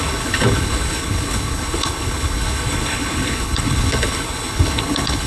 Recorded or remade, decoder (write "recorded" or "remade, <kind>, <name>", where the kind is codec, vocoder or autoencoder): remade, codec, HILCodec